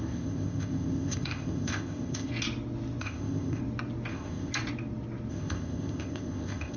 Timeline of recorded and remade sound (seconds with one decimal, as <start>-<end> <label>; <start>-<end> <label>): 0.0-2.3 remade; 2.3-3.0 recorded; 3.0-3.6 remade; 3.6-4.1 recorded; 4.1-4.5 remade; 4.5-5.3 recorded; 5.3-6.8 remade